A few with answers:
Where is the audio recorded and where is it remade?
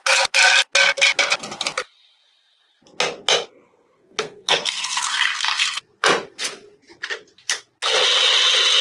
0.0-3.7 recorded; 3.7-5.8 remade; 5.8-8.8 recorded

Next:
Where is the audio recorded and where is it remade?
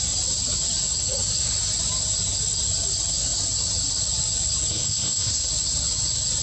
0.0-4.7 recorded; 4.7-5.5 remade; 5.5-6.4 recorded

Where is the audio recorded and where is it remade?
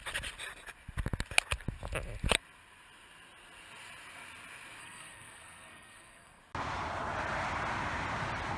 0.0-4.8 recorded; 4.8-6.4 remade; 6.4-8.6 recorded